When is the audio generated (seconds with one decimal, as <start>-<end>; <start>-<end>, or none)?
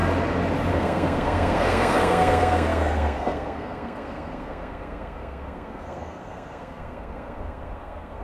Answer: 0.7-8.2